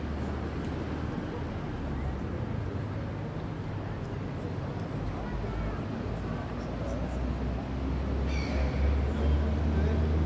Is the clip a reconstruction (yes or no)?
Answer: no